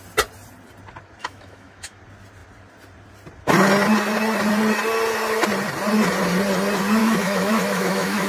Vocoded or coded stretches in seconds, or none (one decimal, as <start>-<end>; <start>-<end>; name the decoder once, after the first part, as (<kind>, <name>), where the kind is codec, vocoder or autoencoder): 1.2-2.0 (autoencoder, DAC-VAE); 7.0-8.3